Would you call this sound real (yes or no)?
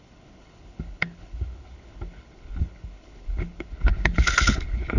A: no